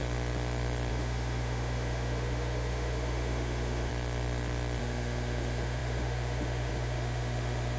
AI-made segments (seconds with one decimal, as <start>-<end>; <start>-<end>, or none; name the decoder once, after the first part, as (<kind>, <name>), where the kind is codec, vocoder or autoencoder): 0.9-3.9 (autoencoder, DAC-VAE); 4.8-7.8